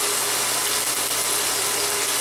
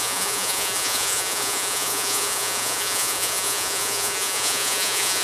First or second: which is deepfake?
second